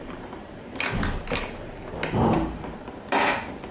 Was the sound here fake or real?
real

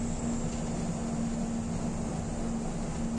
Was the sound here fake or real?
real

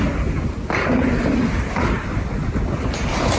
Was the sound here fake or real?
fake